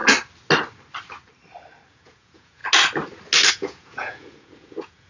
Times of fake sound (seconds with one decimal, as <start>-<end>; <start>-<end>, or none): 1.9-2.6; 3.5-5.1

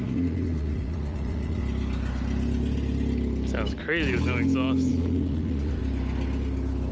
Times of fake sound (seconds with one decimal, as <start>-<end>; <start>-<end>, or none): 0.0-1.6; 4.9-5.8

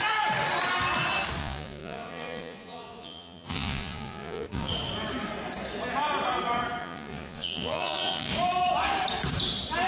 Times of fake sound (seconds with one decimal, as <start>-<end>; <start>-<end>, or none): 1.4-4.7; 6.8-8.3

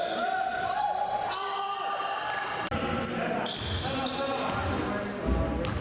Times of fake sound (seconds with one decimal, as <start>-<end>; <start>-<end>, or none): none

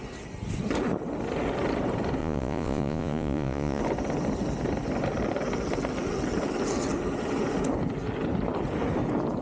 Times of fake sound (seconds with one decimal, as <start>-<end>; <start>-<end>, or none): 2.2-3.8

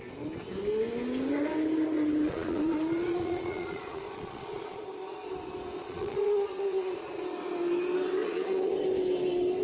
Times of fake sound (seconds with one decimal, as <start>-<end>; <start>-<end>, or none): 2.3-4.8; 5.8-7.2; 8.2-8.7

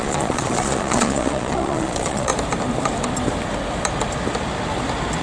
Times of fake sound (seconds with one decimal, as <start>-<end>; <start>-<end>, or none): 0.0-2.3

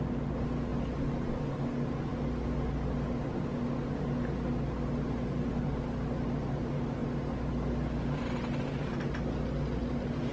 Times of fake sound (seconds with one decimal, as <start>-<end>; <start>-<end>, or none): none